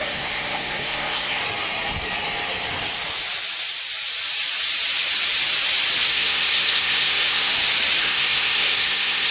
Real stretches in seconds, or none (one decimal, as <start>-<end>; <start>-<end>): 1.4-6.1; 7.5-8.0